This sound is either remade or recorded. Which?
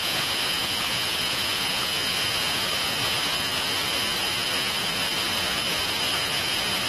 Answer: remade